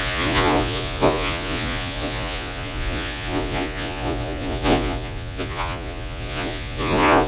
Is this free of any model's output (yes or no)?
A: no